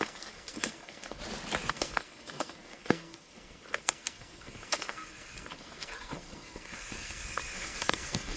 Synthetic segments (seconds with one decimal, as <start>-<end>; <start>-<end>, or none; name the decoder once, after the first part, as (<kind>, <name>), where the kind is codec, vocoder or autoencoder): 0.0-1.2 (codec, SNAC); 1.7-8.4